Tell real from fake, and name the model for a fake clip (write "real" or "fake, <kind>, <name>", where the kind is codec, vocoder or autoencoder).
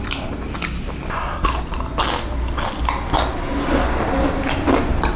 real